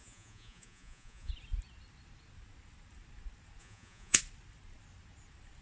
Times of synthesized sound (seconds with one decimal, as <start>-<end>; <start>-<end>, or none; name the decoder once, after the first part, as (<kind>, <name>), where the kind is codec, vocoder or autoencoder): 0.0-1.3 (vocoder, Vocos); 3.6-4.2